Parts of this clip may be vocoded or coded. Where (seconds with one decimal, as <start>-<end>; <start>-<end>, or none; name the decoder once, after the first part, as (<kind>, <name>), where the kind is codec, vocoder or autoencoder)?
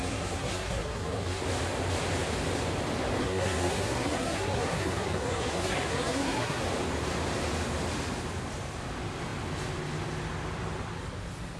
0.0-1.4 (codec, SNAC); 3.2-6.6